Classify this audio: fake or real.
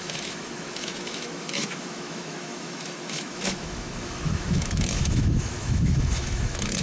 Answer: fake